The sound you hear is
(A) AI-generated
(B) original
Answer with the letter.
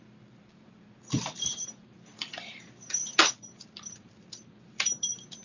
A